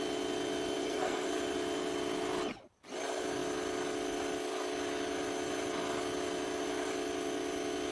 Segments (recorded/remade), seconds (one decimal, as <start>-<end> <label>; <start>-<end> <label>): 0.0-0.8 recorded; 0.8-1.4 remade; 1.4-7.9 recorded